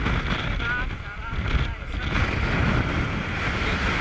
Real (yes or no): yes